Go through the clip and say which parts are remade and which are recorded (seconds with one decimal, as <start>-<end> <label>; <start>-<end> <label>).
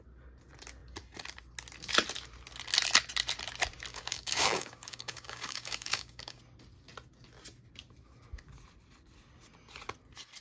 0.0-3.9 recorded; 3.9-6.4 remade; 6.4-10.4 recorded